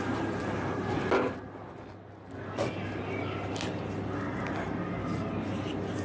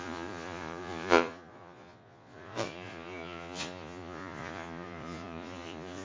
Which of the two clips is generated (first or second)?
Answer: second